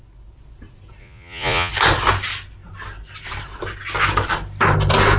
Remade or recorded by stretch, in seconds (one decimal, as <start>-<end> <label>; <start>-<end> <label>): 0.0-1.0 recorded; 1.0-1.7 remade; 1.7-5.2 recorded